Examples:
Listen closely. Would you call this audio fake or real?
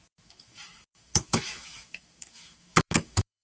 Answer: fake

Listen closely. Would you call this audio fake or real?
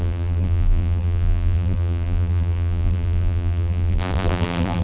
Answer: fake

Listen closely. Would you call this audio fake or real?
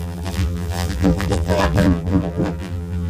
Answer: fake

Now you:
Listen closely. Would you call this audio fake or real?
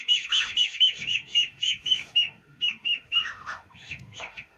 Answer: fake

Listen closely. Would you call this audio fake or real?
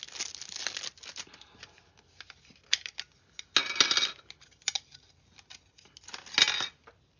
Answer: real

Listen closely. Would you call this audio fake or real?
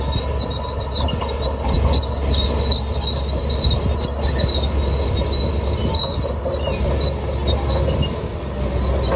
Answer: real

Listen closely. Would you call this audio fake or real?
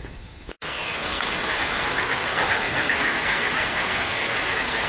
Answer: fake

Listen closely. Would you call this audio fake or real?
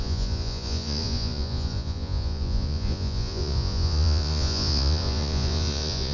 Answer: fake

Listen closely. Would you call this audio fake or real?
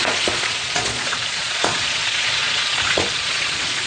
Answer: fake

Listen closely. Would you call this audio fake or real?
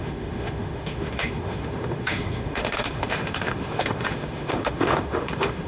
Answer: fake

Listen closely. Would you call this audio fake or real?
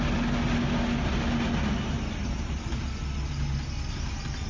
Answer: real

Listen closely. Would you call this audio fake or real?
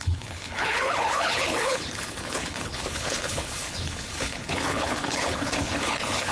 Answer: fake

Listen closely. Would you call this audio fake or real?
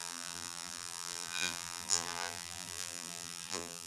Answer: fake